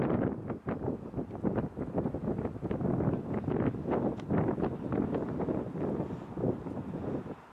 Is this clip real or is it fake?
real